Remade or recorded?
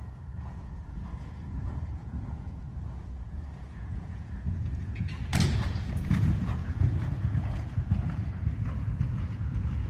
remade